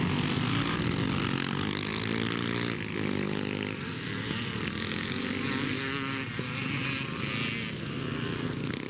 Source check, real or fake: real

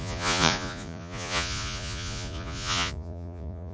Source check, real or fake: fake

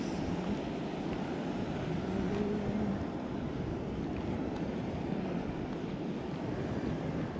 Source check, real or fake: real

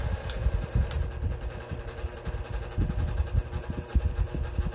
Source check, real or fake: real